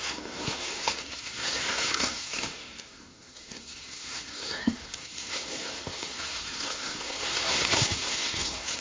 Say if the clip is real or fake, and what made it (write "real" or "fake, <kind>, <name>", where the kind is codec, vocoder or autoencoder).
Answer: fake, codec, SNAC